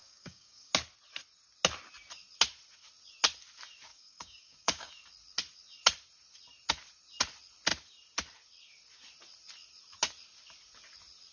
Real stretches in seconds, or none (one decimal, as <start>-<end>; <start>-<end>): 0.7-3.9; 4.9-11.3